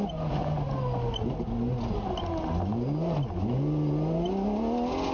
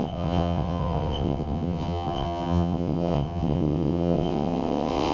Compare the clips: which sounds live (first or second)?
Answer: first